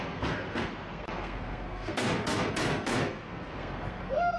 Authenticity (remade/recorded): remade